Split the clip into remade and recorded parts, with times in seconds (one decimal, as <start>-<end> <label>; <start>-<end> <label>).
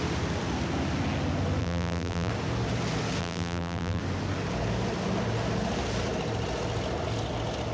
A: 0.0-1.6 recorded; 1.6-2.3 remade; 2.3-3.2 recorded; 3.2-4.0 remade; 4.0-7.7 recorded